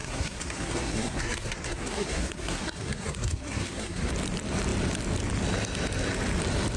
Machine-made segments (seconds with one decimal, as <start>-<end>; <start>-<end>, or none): 0.0-4.1